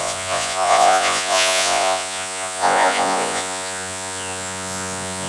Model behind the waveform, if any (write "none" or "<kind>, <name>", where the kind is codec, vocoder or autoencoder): vocoder, Vocos